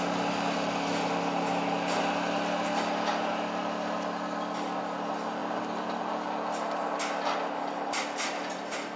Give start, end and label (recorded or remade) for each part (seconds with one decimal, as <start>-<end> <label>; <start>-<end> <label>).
0.0-9.0 recorded